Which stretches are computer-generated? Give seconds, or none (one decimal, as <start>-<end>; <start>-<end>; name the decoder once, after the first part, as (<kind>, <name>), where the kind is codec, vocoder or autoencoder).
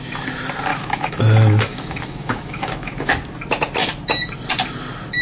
0.7-3.1 (autoencoder, DAC-VAE)